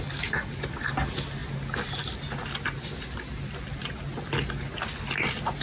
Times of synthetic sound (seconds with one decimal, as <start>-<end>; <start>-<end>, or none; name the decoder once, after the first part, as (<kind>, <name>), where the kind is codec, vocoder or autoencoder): 3.3-3.9 (vocoder, BigVGAN v2)